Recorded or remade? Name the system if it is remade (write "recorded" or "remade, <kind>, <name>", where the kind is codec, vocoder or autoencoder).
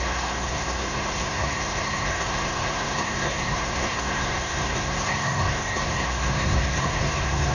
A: remade, codec, SNAC